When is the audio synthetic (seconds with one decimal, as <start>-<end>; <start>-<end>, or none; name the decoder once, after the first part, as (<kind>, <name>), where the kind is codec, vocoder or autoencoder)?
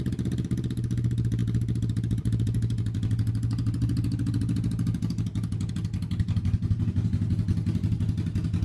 none